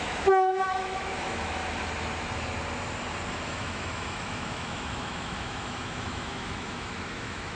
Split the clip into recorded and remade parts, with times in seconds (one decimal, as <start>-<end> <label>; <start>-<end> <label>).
0.0-1.6 remade; 1.6-3.3 recorded; 3.3-7.6 remade